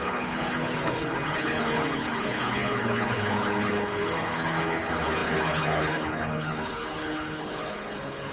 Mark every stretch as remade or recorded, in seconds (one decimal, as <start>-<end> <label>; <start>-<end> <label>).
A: 0.0-8.3 remade

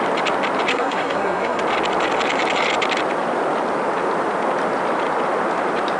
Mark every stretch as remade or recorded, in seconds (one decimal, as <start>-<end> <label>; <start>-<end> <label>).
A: 0.0-0.7 recorded; 0.7-1.6 remade; 1.6-6.0 recorded